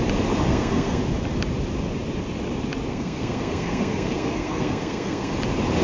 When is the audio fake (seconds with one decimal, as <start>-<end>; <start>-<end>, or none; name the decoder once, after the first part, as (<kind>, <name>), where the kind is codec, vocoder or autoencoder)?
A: 0.5-1.0 (codec, SNAC); 2.9-5.3